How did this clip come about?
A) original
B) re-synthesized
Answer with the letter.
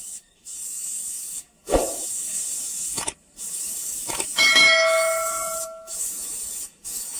B